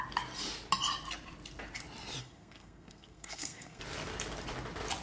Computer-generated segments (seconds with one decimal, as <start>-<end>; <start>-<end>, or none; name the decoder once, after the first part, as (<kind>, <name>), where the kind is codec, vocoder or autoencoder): 2.2-3.8 (codec, SNAC)